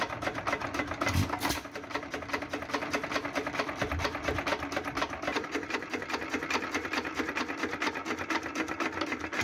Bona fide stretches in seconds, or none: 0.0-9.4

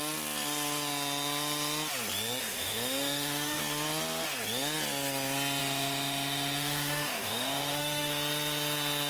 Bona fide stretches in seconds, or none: 0.0-2.4; 3.6-5.6; 8.1-9.1

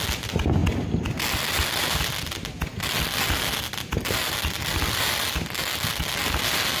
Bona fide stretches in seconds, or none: 0.0-6.8